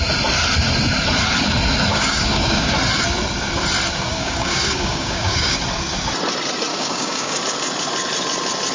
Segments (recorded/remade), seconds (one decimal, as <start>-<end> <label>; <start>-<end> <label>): 0.0-1.9 recorded; 1.9-2.7 remade; 2.7-4.1 recorded; 4.1-5.6 remade; 5.6-6.7 recorded; 6.7-7.4 remade; 7.4-8.7 recorded